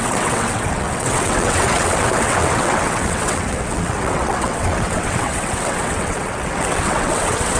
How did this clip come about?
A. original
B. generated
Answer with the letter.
B